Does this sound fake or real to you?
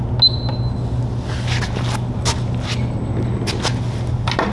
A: real